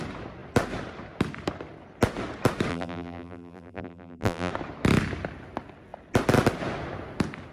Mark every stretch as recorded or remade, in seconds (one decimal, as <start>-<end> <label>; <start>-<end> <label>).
0.0-2.7 recorded; 2.7-4.5 remade; 4.5-7.5 recorded

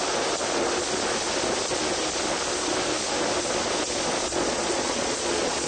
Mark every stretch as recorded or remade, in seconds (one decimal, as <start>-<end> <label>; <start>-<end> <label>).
0.0-4.3 recorded; 4.3-5.7 remade